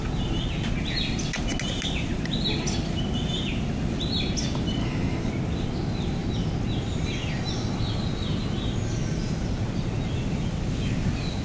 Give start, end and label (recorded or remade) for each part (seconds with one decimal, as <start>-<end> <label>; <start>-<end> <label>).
0.0-4.8 recorded; 4.8-5.3 remade; 5.3-11.4 recorded